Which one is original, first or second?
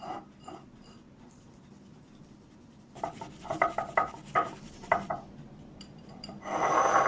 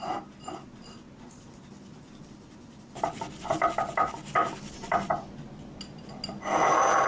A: second